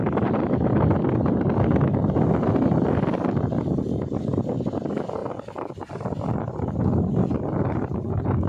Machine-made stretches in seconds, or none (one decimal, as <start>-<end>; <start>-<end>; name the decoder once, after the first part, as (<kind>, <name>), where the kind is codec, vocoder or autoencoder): none